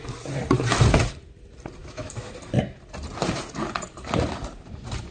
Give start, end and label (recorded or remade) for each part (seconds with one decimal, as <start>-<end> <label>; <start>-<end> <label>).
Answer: 0.0-1.8 recorded; 1.8-2.3 remade; 2.3-5.1 recorded